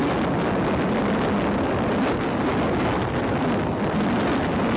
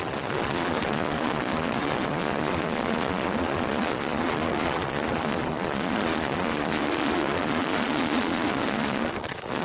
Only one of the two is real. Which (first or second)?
first